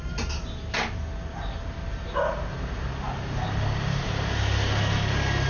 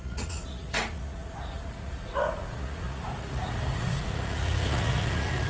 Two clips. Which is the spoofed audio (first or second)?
second